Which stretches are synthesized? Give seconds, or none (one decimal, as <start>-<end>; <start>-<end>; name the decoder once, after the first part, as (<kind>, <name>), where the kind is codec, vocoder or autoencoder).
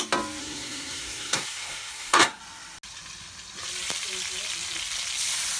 0.4-2.4 (codec, SNAC)